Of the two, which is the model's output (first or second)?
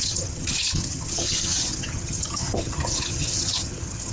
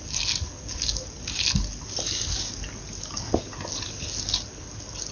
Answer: first